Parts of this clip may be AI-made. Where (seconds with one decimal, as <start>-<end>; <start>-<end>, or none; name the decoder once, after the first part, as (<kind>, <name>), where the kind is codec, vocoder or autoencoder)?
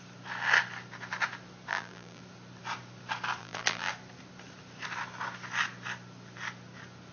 1.7-2.2 (vocoder, BigVGAN v2); 3.4-3.9